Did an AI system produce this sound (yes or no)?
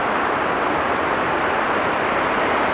no